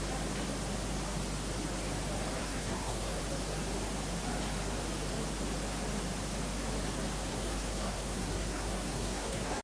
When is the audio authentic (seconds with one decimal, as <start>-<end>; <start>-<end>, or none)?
0.0-2.4; 3.2-7.3